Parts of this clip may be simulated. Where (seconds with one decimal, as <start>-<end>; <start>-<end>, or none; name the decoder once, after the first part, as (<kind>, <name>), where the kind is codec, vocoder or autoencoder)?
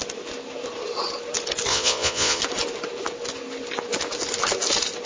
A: 1.7-2.4 (vocoder, Vocos)